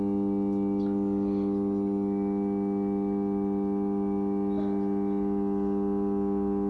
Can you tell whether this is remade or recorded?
recorded